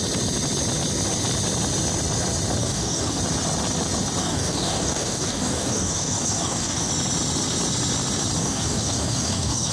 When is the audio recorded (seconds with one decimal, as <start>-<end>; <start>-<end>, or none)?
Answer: 0.0-2.6; 3.2-4.2; 6.9-8.4